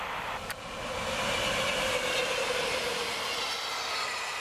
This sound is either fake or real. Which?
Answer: real